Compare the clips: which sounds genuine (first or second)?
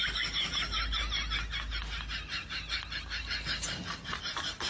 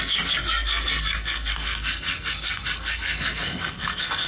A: first